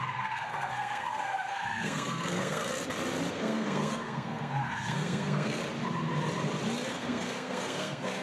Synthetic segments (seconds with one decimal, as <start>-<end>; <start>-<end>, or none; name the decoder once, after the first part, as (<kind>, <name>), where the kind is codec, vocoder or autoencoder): 0.0-2.6 (codec, SNAC); 3.3-5.6; 6.9-8.2